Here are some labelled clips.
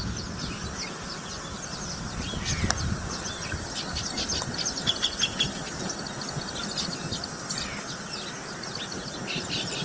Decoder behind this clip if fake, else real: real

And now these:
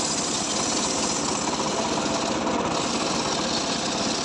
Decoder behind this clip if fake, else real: real